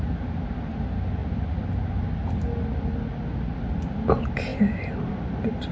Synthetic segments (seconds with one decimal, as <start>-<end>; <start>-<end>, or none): none

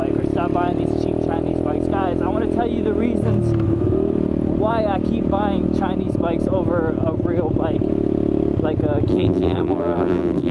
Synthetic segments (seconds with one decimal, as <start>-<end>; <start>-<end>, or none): 9.1-10.5